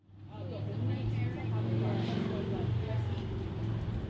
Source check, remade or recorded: recorded